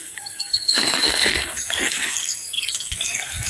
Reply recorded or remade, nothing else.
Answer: remade